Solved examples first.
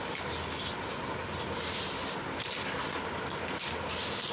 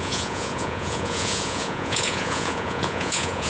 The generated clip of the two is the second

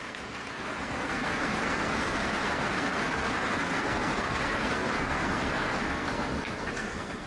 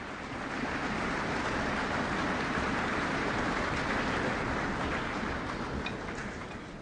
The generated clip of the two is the first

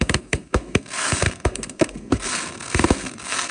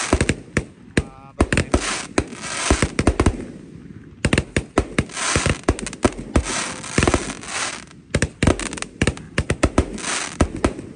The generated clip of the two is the first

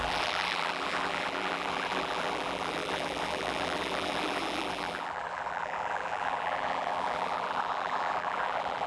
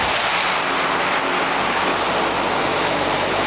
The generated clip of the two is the first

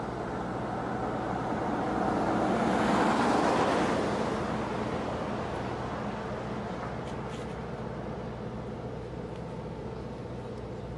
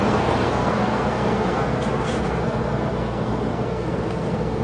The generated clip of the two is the second